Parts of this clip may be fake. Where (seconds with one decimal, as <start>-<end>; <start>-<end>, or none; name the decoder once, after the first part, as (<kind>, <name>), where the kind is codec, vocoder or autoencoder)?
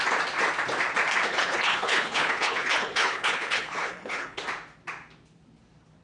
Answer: 1.3-4.4 (codec, HILCodec)